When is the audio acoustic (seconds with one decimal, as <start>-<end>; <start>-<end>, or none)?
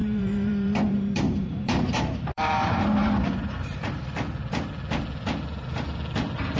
4.0-6.6